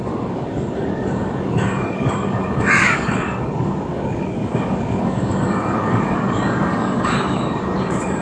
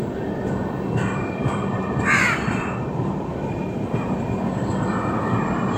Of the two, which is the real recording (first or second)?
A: second